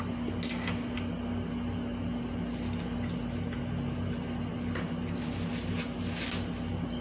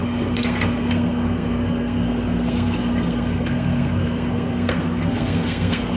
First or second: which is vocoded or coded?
second